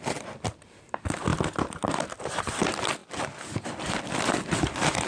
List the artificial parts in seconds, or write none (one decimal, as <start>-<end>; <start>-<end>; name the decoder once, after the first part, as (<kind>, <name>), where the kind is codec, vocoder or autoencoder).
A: none